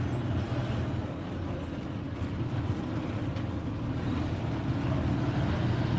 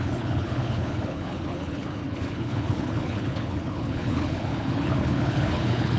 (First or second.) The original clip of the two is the first